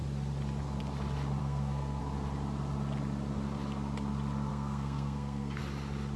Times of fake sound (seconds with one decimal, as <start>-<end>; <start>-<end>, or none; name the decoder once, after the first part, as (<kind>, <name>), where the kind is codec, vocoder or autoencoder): 1.4-2.0 (codec, SNAC); 4.5-5.6